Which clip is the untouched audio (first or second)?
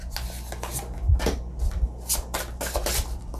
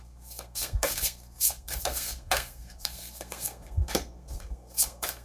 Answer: first